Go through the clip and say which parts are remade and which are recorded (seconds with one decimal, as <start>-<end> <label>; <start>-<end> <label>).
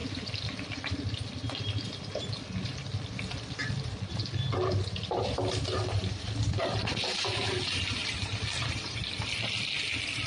0.0-2.1 remade; 2.1-3.6 recorded; 3.6-5.6 remade; 5.6-10.3 recorded